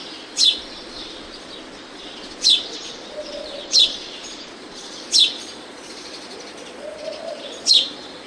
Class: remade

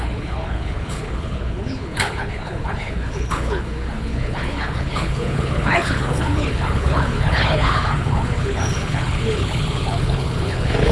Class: remade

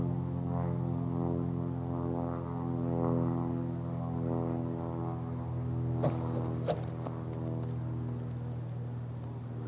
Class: recorded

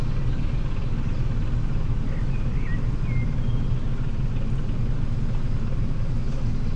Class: recorded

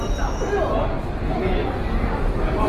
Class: recorded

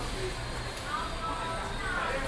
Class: recorded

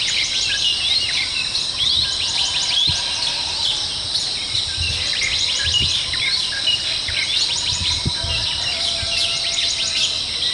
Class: recorded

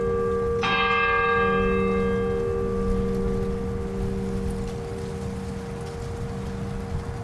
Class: recorded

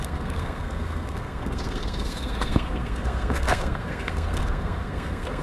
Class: remade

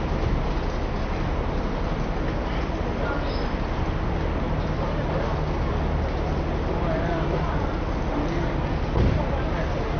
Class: recorded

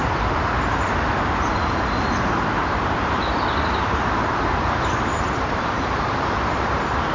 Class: remade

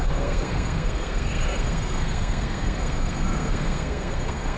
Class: remade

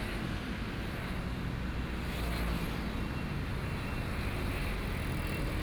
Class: recorded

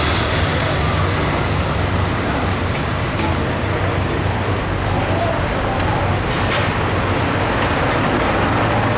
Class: recorded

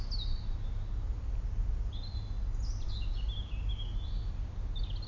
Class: recorded